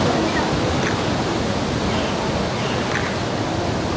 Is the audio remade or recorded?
recorded